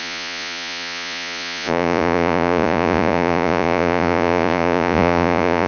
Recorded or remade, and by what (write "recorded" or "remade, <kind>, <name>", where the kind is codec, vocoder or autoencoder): remade, vocoder, Vocos